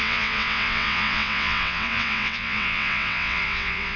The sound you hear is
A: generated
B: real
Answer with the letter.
A